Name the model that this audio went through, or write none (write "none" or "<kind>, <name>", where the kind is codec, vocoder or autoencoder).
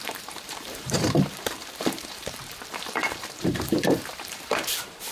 vocoder, BigVGAN v2